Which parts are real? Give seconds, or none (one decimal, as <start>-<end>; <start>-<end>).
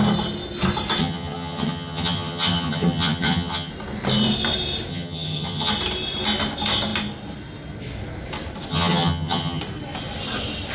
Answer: 0.0-1.0; 3.7-4.9; 5.7-8.7; 9.6-10.7